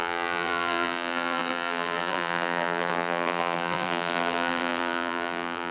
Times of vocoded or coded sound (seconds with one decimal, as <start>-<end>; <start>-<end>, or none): 0.0-5.7